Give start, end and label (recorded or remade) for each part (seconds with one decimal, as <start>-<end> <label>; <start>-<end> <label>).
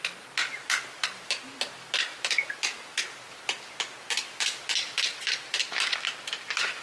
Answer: 0.0-6.8 recorded